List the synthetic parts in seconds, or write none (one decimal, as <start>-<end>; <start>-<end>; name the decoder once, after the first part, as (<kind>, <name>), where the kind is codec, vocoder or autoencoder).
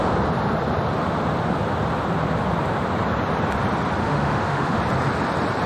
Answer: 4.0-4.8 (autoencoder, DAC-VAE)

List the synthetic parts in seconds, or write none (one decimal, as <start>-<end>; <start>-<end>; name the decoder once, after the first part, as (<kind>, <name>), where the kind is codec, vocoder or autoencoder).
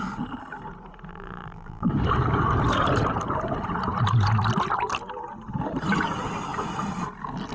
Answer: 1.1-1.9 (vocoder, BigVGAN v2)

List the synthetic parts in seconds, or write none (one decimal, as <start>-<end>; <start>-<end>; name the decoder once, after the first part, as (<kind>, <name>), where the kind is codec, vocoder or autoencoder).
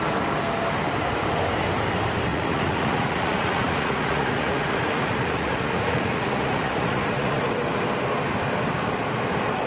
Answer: 2.3-7.5 (vocoder, Vocos)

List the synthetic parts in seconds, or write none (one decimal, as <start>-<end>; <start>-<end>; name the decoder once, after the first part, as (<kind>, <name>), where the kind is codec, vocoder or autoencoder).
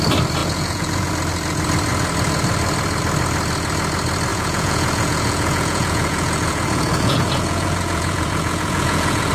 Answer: 0.4-1.1 (vocoder, Vocos); 4.3-9.3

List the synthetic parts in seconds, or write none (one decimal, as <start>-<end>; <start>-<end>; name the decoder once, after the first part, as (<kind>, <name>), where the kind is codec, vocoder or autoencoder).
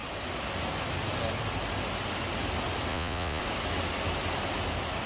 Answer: 2.9-3.4 (vocoder, Vocos)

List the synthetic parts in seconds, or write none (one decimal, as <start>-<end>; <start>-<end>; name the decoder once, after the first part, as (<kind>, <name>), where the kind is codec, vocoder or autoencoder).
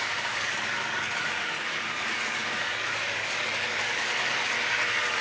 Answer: 0.0-5.2 (codec, DAC)